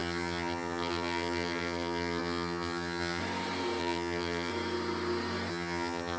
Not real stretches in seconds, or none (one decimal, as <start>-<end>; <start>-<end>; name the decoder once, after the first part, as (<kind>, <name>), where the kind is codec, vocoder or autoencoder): 0.0-3.2 (vocoder, HiFi-GAN); 3.8-4.5; 5.5-6.2